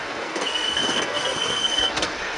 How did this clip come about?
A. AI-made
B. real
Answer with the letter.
A